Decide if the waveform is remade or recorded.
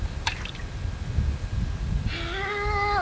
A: recorded